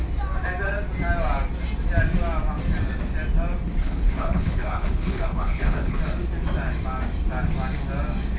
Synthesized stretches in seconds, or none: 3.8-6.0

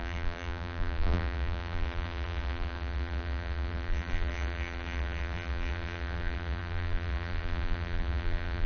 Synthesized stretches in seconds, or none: 0.0-8.7

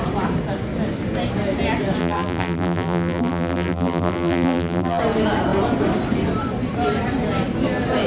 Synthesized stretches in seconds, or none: 2.0-5.0

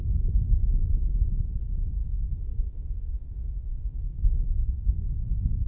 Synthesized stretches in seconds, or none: 2.0-5.7

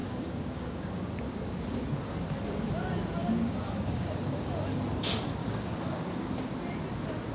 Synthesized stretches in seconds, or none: 0.0-1.1; 3.2-4.1; 5.4-6.1

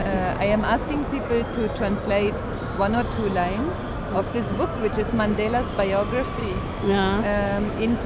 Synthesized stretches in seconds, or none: 6.4-8.1

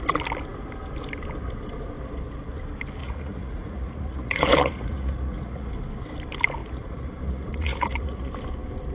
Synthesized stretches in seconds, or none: 3.0-5.7; 6.6-8.3

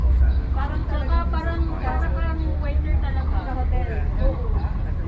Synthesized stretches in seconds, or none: none